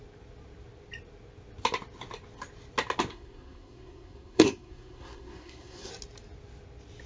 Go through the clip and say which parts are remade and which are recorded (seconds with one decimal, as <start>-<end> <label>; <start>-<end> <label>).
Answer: 0.0-3.1 recorded; 3.1-5.9 remade; 5.9-7.1 recorded